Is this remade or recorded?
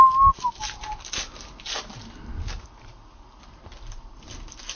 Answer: recorded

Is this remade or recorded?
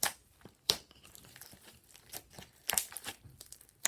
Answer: remade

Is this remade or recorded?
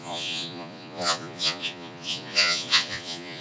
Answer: remade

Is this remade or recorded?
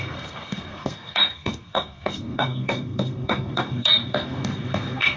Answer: remade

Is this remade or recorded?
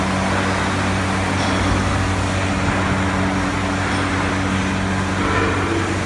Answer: recorded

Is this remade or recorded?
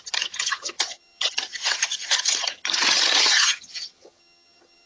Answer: remade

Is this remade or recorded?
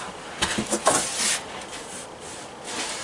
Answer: recorded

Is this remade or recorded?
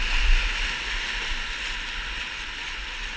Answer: recorded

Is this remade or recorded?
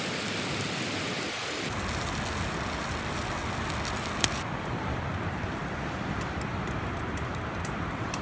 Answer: recorded